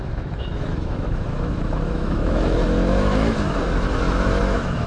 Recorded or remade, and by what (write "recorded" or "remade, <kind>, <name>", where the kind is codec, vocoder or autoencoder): remade, autoencoder, DAC-VAE